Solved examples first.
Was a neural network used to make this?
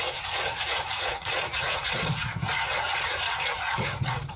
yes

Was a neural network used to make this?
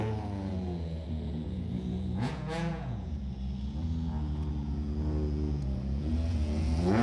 yes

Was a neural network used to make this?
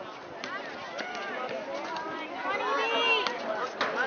no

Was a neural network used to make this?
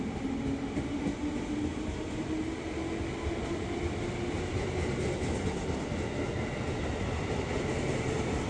no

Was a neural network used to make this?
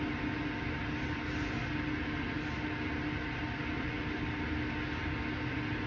no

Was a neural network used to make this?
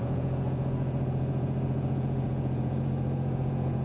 yes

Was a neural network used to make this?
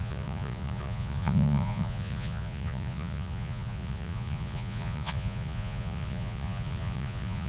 yes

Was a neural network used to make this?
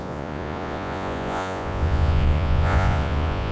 yes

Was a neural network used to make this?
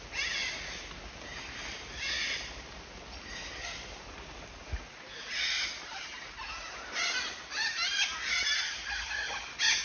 no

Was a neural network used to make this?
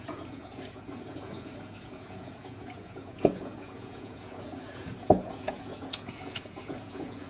yes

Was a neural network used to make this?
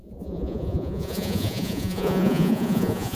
yes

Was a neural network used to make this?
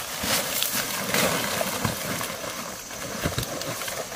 no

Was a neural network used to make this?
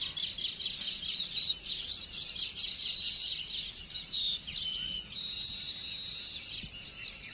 no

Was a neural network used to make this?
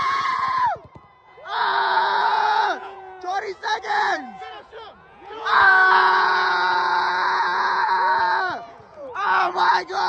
yes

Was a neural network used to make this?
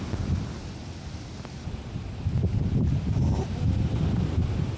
no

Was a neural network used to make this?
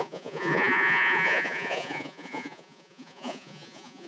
yes